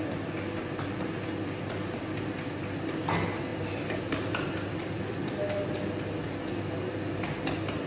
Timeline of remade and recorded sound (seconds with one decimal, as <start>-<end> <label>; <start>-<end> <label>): 0.0-3.5 recorded; 3.5-5.3 remade; 5.3-7.9 recorded